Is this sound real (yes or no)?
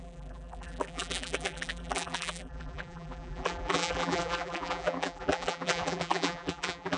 no